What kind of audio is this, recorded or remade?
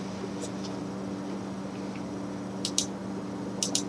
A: recorded